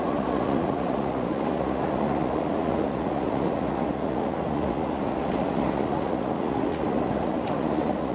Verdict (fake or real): fake